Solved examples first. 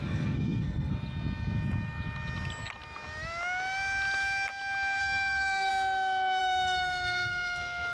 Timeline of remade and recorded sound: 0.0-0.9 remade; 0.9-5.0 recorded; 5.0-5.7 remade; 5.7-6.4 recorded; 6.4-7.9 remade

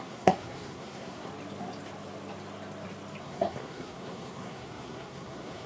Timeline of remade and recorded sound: 0.0-1.3 remade; 1.3-3.2 recorded; 3.2-5.7 remade